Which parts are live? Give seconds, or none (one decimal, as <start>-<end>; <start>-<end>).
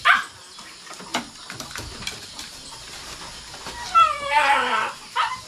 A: 0.0-5.5